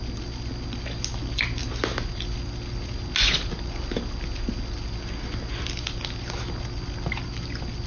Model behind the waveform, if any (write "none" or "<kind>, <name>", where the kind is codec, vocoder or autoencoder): none